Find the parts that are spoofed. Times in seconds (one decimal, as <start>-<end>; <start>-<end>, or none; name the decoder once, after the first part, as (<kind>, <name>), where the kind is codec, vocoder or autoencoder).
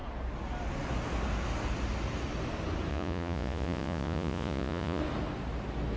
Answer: 2.9-5.0 (vocoder, Vocos)